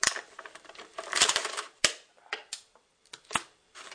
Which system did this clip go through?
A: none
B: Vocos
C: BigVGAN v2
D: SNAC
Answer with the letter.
C